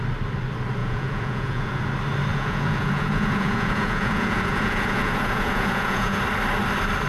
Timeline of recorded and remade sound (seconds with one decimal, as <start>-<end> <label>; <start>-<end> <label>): 0.0-0.8 recorded; 0.8-1.8 remade; 1.8-2.3 recorded; 2.3-6.2 remade; 6.2-7.1 recorded